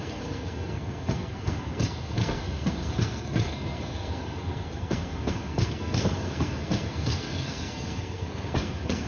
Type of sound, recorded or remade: remade